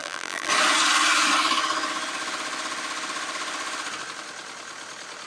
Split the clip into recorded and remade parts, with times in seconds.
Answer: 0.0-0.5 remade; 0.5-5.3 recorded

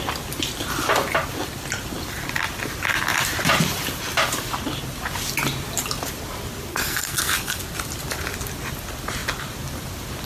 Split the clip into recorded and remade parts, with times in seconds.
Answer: 0.0-6.7 recorded; 6.7-7.6 remade; 7.6-10.3 recorded

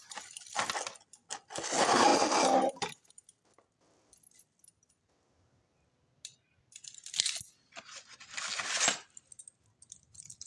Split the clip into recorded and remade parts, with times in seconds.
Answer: 0.0-10.5 recorded